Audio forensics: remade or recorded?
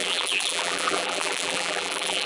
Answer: remade